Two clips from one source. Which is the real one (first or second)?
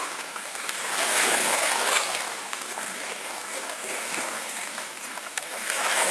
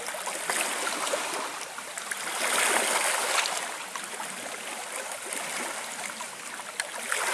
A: second